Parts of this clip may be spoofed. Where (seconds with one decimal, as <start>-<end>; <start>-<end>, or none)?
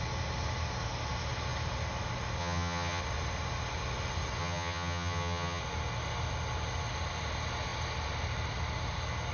2.4-3.0; 4.4-5.6